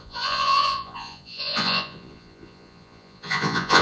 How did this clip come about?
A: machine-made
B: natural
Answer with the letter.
A